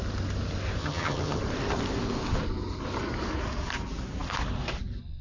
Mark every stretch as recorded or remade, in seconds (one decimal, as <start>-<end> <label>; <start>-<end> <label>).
0.0-0.8 recorded; 0.8-1.4 remade; 1.4-5.2 recorded